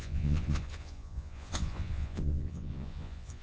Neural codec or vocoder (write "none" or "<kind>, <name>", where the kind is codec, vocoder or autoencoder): vocoder, Vocos